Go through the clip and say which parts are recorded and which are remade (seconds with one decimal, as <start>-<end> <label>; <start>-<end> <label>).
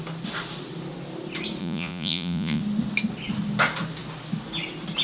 0.0-1.6 recorded; 1.6-2.6 remade; 2.6-5.0 recorded